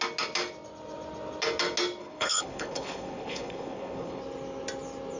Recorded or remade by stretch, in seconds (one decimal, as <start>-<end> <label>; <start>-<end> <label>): 0.0-2.0 recorded; 2.0-4.2 remade; 4.2-5.2 recorded